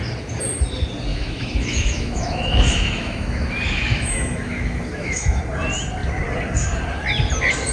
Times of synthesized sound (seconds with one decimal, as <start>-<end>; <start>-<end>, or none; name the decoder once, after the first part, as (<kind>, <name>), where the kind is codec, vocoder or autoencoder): 1.1-5.4 (autoencoder, DAC-VAE)

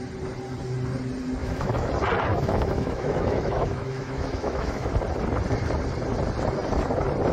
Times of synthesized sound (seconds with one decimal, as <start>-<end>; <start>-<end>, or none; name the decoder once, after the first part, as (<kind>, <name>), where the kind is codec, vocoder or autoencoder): 1.4-1.9 (autoencoder, DAC-VAE); 2.3-4.9

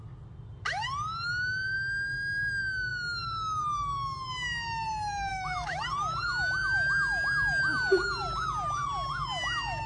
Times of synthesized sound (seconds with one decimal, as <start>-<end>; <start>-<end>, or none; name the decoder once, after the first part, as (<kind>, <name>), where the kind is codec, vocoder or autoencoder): 5.3-5.8 (autoencoder, DAC-VAE)

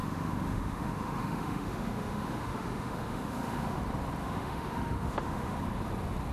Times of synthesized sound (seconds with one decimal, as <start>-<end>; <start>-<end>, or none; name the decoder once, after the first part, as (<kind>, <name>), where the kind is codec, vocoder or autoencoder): 0.0-3.8 (autoencoder, DAC-VAE); 4.2-5.6

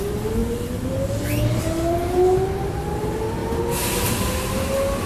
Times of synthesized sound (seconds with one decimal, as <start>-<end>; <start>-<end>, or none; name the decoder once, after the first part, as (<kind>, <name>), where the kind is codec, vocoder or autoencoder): none

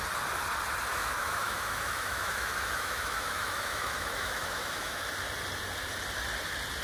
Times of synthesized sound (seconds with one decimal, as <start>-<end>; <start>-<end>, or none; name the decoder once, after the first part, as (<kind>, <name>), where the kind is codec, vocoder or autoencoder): 0.9-5.0 (autoencoder, DAC-VAE)